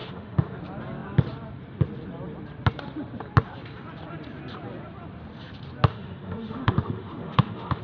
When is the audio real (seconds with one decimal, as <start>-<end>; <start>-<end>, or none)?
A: 0.6-5.9